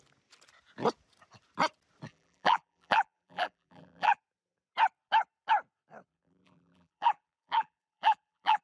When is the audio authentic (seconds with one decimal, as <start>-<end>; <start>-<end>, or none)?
0.0-2.1; 4.2-6.1